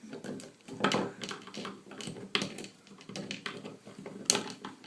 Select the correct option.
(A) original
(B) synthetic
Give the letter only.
A